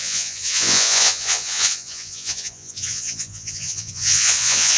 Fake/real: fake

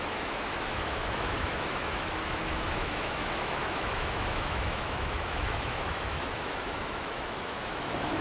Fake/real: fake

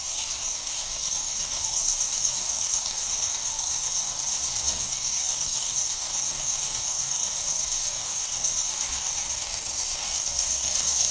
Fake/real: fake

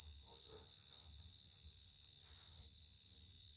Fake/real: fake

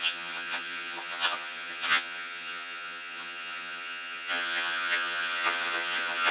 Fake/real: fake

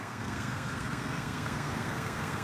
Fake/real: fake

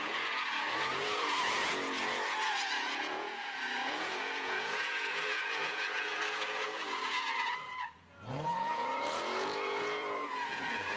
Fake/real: fake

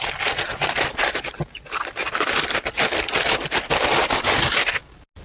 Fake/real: real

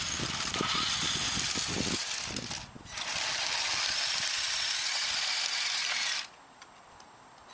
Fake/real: real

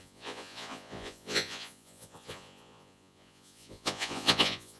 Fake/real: fake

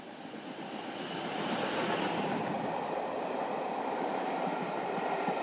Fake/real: real